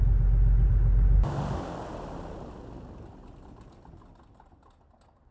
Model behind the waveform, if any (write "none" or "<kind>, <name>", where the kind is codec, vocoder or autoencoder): none